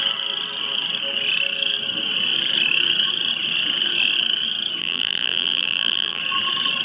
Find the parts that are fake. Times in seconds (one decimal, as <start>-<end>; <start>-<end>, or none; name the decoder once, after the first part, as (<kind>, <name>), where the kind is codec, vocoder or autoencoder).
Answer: 4.8-6.2 (vocoder, BigVGAN v2)